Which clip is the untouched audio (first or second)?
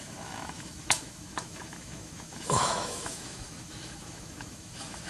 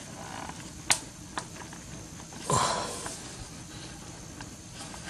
second